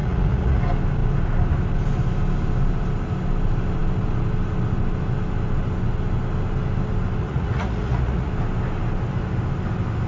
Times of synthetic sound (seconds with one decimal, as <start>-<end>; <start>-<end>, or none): 0.0-0.6; 7.2-8.3